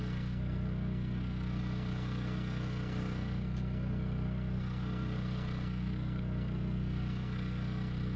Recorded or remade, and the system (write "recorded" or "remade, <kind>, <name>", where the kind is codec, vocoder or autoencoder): remade, codec, SNAC